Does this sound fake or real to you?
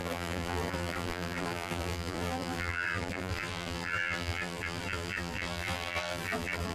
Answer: fake